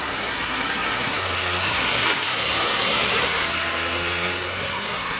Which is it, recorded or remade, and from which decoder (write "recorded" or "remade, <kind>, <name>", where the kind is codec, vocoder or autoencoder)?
remade, codec, SNAC